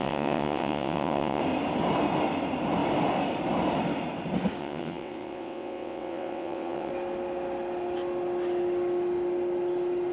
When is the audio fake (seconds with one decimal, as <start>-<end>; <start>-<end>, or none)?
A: 0.0-1.4; 4.6-6.9